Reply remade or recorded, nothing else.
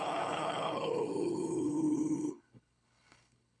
remade